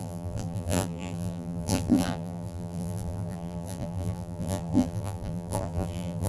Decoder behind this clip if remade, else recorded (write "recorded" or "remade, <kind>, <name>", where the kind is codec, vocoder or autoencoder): remade, vocoder, BigVGAN v2